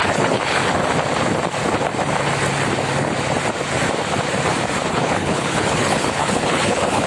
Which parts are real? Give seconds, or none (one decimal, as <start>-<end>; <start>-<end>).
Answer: 0.6-4.9